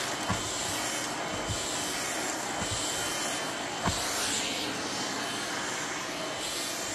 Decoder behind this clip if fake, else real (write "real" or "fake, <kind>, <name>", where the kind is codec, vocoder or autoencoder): real